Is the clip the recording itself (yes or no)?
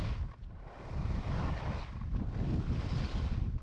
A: yes